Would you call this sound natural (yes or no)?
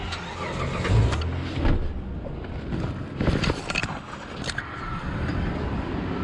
yes